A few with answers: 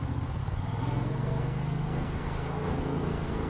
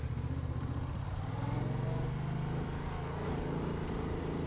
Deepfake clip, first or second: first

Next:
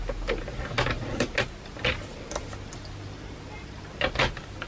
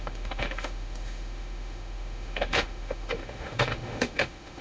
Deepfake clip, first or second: second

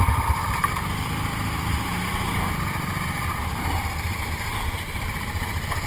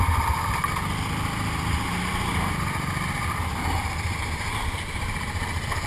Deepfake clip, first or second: first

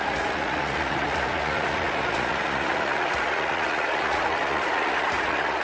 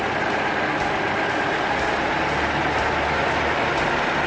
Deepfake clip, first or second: first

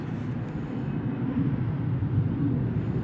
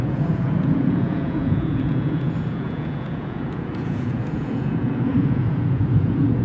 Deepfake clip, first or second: second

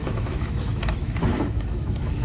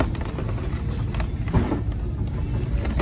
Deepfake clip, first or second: first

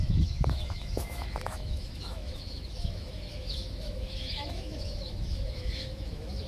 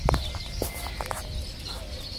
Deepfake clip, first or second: first